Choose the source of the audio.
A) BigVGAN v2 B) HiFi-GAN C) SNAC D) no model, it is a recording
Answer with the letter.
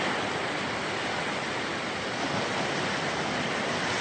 D